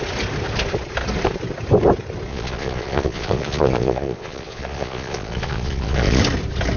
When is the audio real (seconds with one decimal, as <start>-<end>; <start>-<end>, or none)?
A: 0.0-2.3; 6.2-6.8